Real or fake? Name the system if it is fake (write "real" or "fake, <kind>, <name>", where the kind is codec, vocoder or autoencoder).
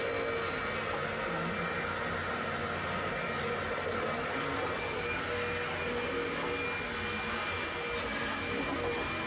real